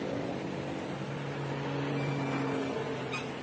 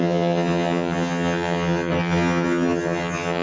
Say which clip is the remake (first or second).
second